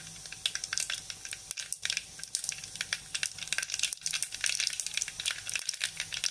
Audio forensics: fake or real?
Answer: real